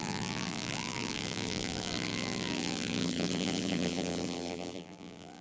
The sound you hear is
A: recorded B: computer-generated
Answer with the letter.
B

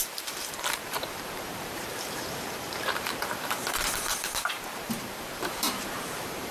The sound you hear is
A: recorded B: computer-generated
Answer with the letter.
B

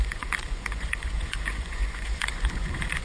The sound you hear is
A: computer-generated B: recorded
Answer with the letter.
A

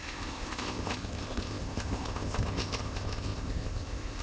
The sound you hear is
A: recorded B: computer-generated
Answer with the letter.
B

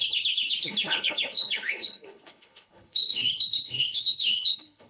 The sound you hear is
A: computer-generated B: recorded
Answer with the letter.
A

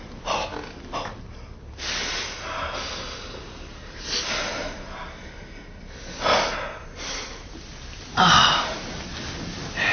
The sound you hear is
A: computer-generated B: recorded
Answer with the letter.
B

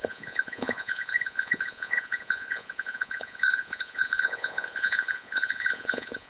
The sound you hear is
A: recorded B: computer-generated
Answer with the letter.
B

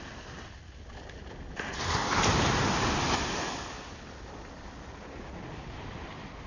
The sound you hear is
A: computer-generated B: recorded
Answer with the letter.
B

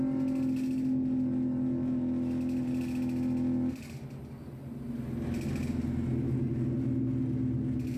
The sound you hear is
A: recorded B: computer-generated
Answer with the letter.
A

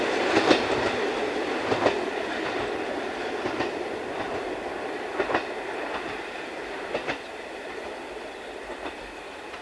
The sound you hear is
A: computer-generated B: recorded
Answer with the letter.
B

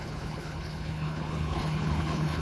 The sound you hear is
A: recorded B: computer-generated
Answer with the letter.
B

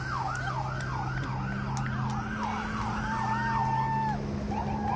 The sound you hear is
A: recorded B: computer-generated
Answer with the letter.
A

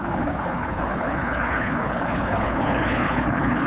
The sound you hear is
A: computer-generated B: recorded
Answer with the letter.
A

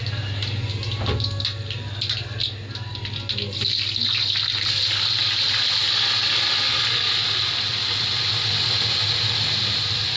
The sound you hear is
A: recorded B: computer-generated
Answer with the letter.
A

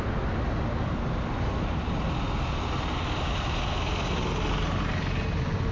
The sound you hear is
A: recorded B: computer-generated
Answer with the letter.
A